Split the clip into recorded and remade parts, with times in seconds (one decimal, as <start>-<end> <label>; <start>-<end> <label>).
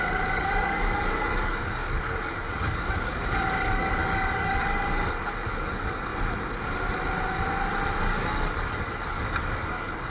0.0-6.1 remade; 6.1-8.0 recorded; 8.0-10.1 remade